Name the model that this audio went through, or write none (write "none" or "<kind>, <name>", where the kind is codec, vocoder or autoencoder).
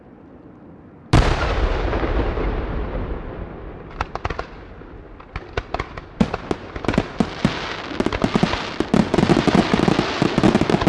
none